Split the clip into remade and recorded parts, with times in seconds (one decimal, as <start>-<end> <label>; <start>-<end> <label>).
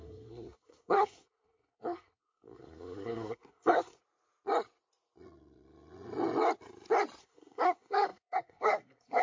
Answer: 0.0-4.0 remade; 4.0-7.2 recorded; 7.2-9.2 remade